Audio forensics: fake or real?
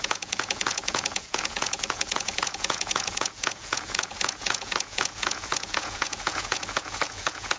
fake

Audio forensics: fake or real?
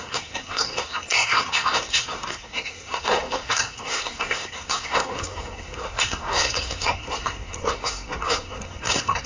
fake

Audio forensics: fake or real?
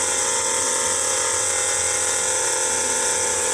fake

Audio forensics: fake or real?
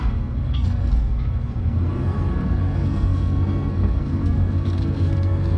fake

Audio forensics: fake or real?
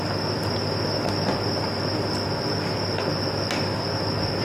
real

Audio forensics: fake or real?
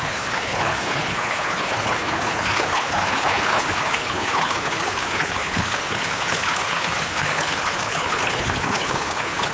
fake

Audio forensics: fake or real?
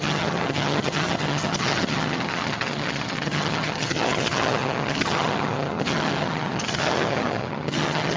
fake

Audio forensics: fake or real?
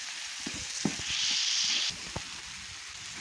real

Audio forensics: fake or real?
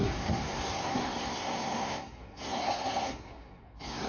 fake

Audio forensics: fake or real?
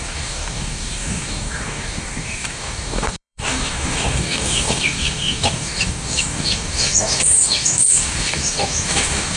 fake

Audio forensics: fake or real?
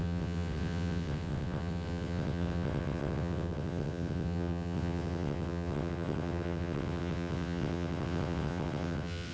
fake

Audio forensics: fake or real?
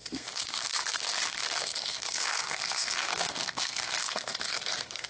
fake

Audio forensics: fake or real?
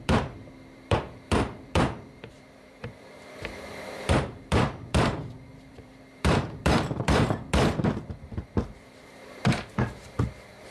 fake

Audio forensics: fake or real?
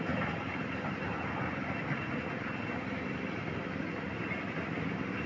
real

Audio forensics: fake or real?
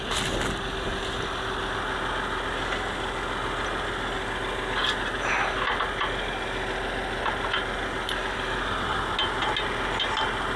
real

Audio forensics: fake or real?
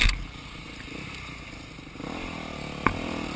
real